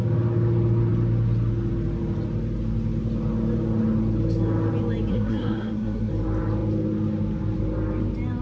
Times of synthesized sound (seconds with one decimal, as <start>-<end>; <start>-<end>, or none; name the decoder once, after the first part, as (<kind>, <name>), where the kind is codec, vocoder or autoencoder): 5.1-6.1 (codec, SNAC)